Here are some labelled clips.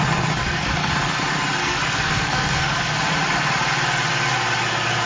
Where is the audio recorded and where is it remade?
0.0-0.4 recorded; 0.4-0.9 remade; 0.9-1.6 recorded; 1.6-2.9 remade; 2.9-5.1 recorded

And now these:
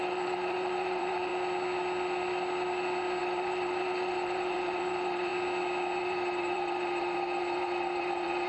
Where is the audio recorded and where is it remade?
0.0-1.3 remade; 1.3-3.2 recorded; 3.2-5.3 remade; 5.3-6.0 recorded; 6.0-8.5 remade

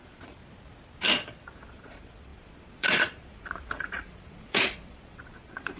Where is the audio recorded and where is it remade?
0.0-0.4 remade; 0.4-1.7 recorded; 1.7-5.8 remade

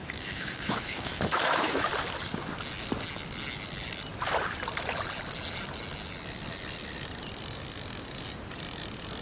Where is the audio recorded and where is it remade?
0.0-1.9 remade; 1.9-9.2 recorded

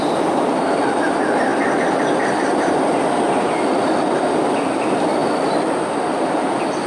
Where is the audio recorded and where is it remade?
0.0-6.9 recorded